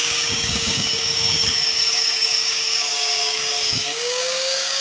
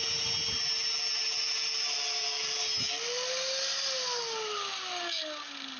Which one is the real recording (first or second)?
second